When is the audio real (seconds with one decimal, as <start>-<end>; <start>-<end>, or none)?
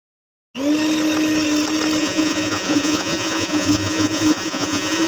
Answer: 0.0-2.0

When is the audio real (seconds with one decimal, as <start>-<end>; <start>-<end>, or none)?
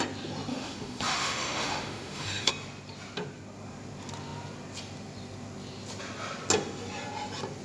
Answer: 0.0-0.5; 2.5-7.6